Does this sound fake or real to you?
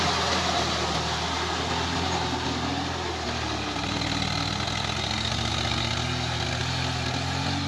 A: real